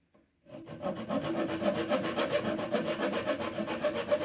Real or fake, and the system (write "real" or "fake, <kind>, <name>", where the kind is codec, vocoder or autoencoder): real